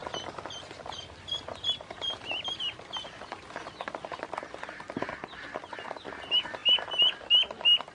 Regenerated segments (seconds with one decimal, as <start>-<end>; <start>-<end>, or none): none